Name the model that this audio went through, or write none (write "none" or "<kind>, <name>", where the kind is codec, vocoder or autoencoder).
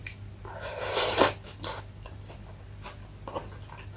none